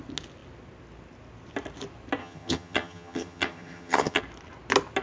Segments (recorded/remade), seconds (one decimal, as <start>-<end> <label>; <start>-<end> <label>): 0.0-2.2 recorded; 2.2-4.2 remade; 4.2-5.0 recorded